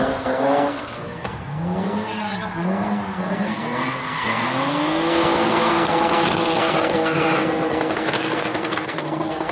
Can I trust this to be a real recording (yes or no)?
no